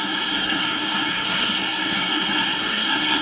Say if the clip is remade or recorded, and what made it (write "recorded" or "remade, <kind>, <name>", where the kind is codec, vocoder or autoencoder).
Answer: remade, codec, SNAC